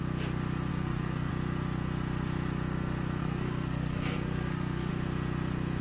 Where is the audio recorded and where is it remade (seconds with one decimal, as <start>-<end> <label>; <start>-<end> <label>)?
0.0-0.7 recorded; 0.7-1.3 remade; 1.3-3.2 recorded; 3.2-4.9 remade; 4.9-5.8 recorded